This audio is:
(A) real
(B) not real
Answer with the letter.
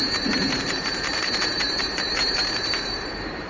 B